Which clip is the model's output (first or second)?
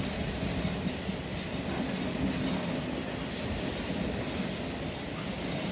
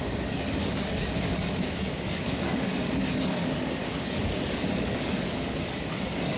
second